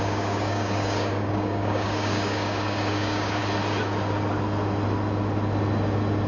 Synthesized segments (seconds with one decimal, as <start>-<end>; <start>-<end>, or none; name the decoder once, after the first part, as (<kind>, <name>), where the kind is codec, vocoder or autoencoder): 0.0-3.4 (codec, DAC)